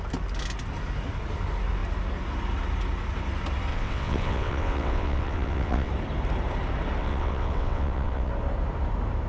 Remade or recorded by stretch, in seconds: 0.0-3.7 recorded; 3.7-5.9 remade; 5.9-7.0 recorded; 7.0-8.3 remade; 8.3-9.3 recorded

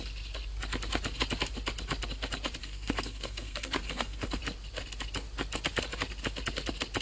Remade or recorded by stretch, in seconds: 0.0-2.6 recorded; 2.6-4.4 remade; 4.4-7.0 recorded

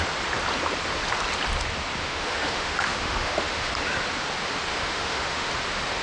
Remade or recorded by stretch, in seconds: 0.0-2.0 recorded; 2.0-3.7 remade; 3.7-4.7 recorded; 4.7-5.5 remade; 5.5-6.0 recorded